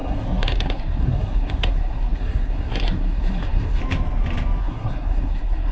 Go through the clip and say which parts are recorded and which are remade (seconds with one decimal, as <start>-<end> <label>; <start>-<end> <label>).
0.0-3.8 remade; 3.8-4.6 recorded; 4.6-5.7 remade